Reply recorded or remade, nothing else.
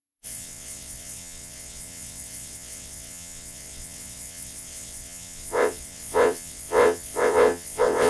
remade